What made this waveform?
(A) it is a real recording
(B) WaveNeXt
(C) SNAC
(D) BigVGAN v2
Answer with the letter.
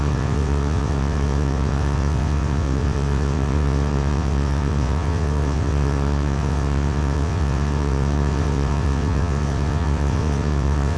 B